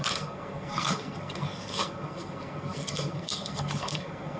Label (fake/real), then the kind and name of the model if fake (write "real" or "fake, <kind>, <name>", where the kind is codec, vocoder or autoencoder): fake, codec, SNAC